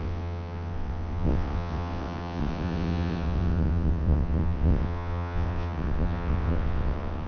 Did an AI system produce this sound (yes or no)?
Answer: yes